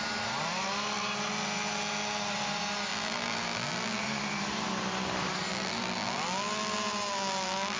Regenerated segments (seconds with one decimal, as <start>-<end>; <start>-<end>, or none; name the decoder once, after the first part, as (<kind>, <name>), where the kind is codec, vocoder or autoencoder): 2.9-4.0 (vocoder, BigVGAN v2); 5.5-7.8